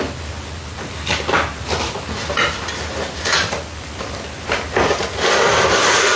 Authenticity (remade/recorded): recorded